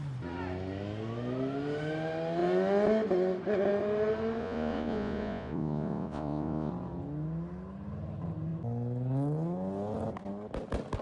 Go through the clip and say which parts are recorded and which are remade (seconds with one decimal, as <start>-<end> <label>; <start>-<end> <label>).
0.0-4.4 recorded; 4.4-6.7 remade; 6.7-11.0 recorded